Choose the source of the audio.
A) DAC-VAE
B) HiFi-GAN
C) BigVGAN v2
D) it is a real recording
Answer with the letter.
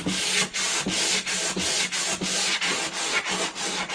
D